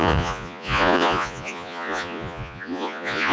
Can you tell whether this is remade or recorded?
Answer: remade